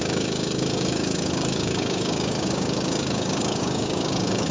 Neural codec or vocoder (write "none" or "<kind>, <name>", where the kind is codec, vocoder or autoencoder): codec, DAC